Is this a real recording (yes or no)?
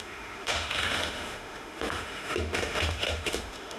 no